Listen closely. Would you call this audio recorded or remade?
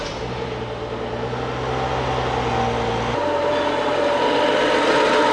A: recorded